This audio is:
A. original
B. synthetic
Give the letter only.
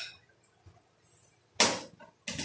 A